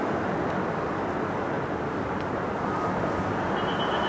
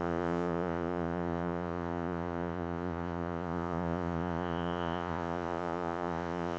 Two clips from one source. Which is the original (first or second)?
first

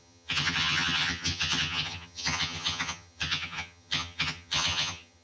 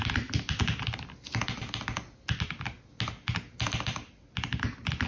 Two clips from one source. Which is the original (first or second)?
second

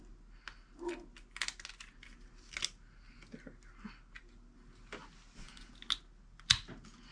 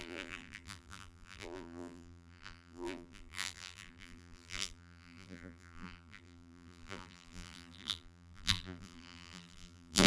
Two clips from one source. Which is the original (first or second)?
first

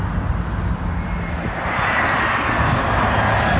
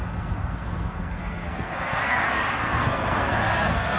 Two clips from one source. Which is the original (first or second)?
first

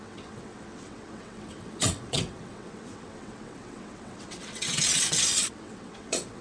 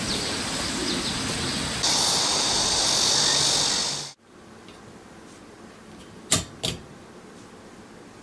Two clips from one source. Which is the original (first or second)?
second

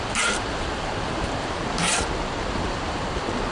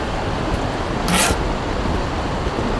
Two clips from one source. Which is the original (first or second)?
second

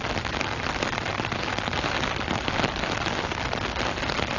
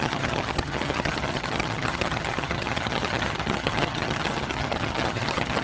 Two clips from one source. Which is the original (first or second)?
first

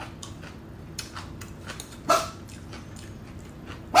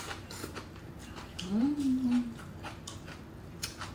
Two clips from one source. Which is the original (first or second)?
first